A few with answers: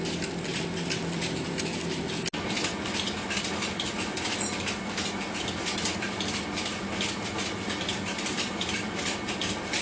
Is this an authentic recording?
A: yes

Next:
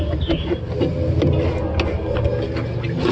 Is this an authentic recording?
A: yes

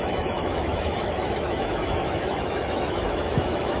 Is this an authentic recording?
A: no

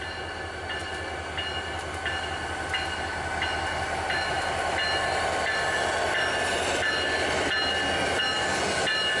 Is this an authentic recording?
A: yes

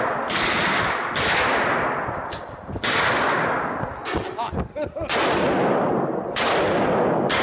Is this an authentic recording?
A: yes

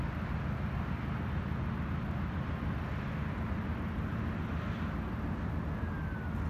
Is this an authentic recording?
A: yes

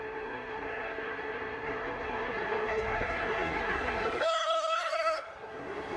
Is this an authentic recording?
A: no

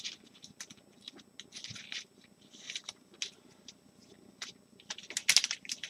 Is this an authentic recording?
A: yes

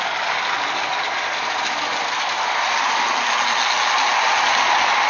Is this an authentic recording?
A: yes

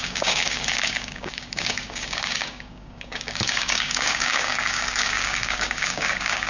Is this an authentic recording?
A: no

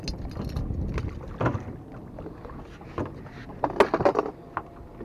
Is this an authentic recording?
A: yes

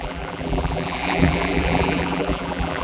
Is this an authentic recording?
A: no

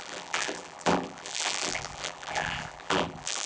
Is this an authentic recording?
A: no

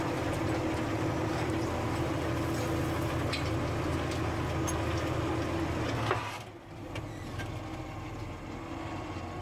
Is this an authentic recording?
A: yes